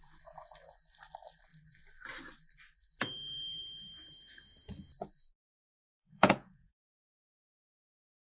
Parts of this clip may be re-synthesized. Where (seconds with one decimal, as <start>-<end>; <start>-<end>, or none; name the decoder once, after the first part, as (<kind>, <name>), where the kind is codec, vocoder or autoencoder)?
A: 5.8-8.2 (vocoder, Vocos)